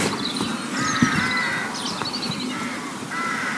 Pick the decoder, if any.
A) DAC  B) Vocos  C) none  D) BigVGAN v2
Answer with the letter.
C